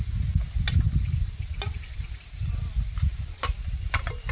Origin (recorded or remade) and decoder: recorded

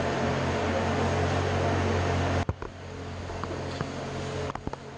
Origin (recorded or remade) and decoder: recorded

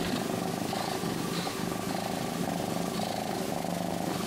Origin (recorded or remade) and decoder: recorded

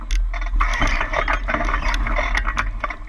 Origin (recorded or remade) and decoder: recorded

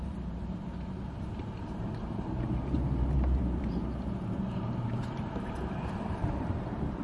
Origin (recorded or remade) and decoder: remade, vocoder, BigVGAN v2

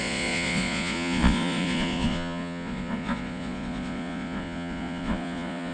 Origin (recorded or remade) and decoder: remade, vocoder, Vocos